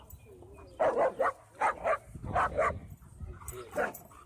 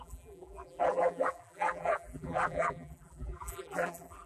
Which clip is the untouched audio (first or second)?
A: first